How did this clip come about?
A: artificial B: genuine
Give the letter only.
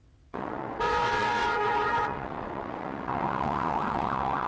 A